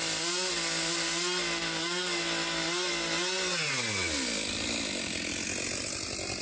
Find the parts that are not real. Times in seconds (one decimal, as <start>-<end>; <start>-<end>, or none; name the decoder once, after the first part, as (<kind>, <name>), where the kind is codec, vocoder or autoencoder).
1.6-2.2 (codec, DAC)